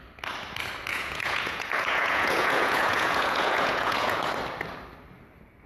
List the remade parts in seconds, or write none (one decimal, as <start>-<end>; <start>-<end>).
0.9-4.3